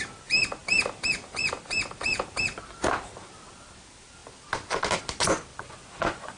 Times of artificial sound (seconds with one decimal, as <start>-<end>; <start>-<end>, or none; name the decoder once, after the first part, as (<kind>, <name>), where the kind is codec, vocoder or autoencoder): 5.5-6.4 (vocoder, Vocos)